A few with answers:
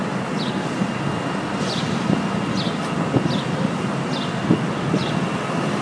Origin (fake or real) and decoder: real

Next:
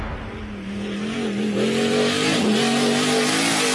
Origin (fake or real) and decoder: real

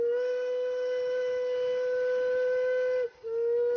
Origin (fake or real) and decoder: real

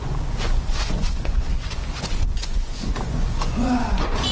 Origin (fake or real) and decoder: fake, vocoder, Vocos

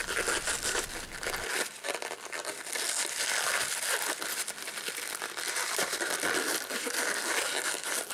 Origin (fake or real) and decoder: real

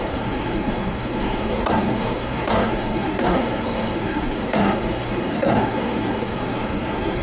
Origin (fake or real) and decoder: fake, codec, SNAC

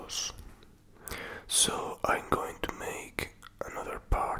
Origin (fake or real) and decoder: real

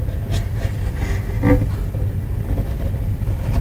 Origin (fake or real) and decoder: real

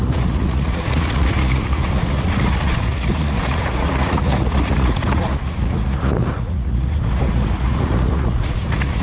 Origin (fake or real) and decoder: fake, vocoder, Vocos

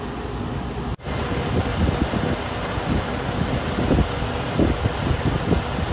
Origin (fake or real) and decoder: real